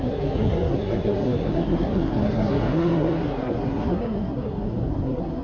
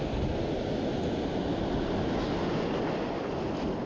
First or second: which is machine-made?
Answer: first